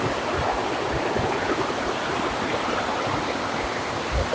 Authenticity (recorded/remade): recorded